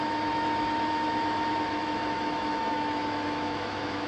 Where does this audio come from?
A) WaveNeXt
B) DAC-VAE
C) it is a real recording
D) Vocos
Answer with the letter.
B